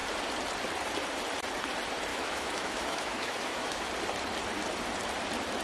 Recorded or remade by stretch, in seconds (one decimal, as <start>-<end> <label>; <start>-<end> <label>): 0.0-2.1 recorded; 2.1-3.9 remade; 3.9-5.6 recorded